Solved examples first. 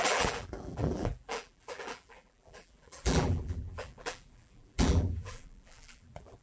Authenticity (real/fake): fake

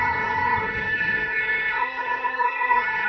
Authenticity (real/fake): fake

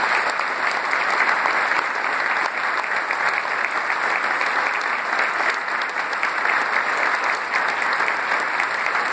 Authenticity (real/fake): real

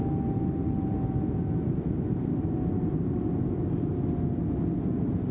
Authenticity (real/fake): real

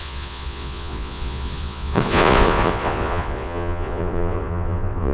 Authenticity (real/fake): fake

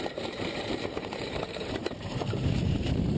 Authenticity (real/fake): fake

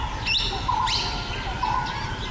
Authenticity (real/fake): real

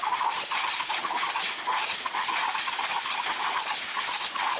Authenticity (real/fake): real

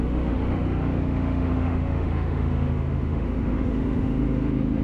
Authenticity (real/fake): fake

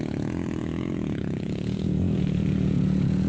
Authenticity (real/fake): fake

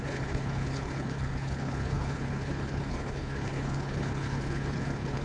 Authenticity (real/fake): fake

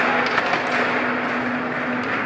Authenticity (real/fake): real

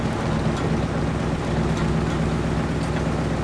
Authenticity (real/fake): real